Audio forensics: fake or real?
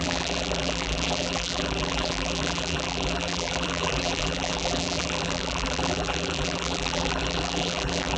fake